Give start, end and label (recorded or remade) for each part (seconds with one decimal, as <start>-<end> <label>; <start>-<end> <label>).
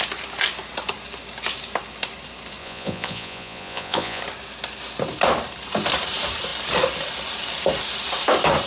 0.0-2.6 recorded; 2.6-4.2 remade; 4.2-8.7 recorded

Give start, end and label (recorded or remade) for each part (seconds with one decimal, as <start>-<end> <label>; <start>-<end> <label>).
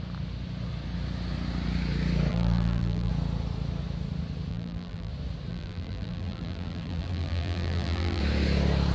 0.0-2.3 recorded; 2.3-3.1 remade; 3.1-4.5 recorded; 4.5-5.1 remade; 5.1-5.5 recorded; 5.5-8.2 remade; 8.2-8.9 recorded